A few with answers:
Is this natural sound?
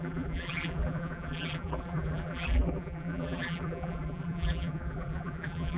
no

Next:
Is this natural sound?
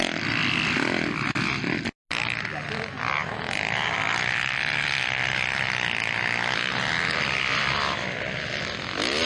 yes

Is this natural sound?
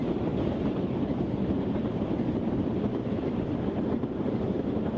no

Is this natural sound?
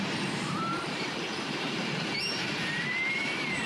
no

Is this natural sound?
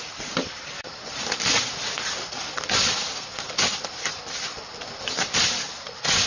no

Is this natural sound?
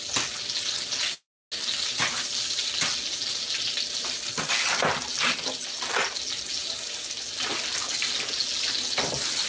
yes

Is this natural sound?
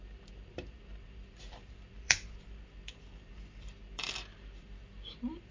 no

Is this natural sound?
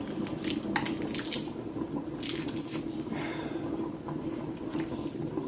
no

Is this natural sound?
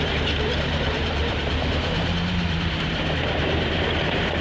no